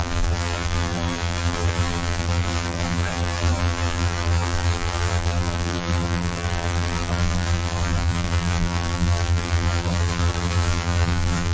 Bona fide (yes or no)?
no